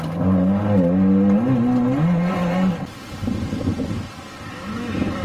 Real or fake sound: real